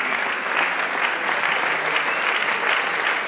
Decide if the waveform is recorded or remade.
recorded